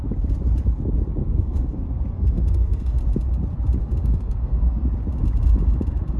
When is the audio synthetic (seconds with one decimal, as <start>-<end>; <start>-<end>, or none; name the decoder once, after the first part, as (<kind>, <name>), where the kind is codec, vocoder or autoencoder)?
1.2-3.0 (codec, SNAC); 3.8-4.7